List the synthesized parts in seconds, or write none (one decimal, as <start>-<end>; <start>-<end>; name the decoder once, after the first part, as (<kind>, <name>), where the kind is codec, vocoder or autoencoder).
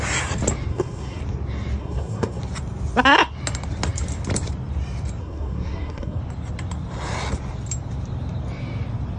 0.7-1.2 (codec, SNAC); 1.8-2.4; 5.2-6.2